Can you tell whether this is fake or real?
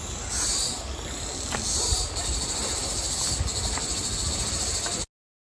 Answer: real